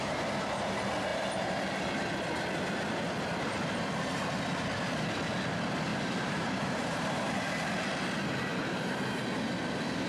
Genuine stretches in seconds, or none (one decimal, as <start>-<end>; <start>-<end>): 0.0-1.1; 1.9-5.9; 7.4-8.5; 9.2-10.1